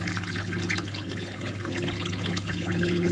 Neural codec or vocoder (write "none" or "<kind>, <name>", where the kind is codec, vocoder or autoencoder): codec, HILCodec